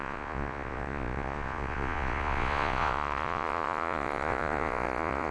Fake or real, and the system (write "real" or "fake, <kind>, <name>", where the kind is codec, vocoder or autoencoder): fake, vocoder, Vocos